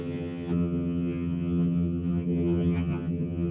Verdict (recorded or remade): remade